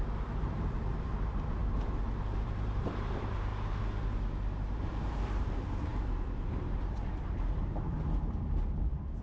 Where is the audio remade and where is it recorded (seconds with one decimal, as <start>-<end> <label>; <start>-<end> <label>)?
0.0-1.6 remade; 1.6-2.2 recorded; 2.2-3.5 remade; 3.5-4.5 recorded; 4.5-9.2 remade